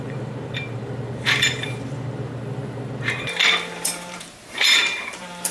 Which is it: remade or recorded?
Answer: remade